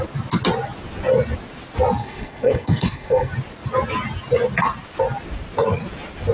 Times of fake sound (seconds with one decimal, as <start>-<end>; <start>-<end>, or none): 2.0-3.3